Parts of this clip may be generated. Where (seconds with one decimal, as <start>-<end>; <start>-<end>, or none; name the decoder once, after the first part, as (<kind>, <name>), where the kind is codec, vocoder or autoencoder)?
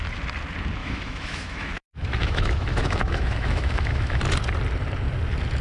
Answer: 0.8-4.2 (autoencoder, DAC-VAE)